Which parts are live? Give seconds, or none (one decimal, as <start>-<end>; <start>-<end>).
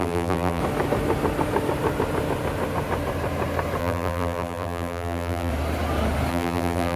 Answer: 0.6-3.8; 5.5-6.3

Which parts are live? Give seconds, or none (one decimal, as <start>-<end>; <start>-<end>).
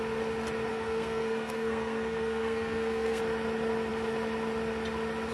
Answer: 0.0-0.7; 3.2-5.3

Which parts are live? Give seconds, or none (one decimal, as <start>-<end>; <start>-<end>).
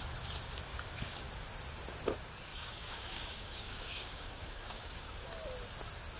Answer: 0.0-0.7; 1.3-2.5; 5.3-6.2